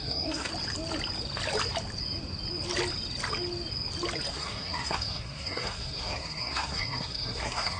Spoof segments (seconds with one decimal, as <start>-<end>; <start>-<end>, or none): 0.0-0.5; 4.3-7.8